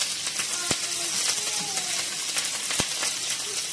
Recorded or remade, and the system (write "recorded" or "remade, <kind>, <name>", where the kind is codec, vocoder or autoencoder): recorded